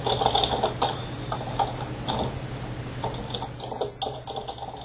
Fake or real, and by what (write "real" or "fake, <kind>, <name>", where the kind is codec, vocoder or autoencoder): real